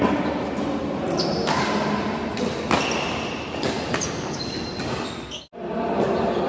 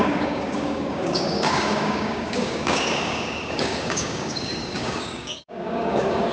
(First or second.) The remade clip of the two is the second